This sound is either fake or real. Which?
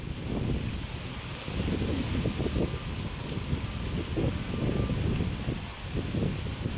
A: real